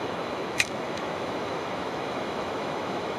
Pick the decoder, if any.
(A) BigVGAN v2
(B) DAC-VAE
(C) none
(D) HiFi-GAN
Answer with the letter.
B